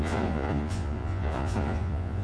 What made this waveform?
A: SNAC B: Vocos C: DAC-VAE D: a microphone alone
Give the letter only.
B